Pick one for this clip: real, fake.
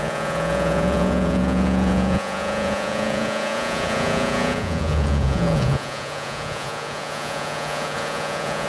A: fake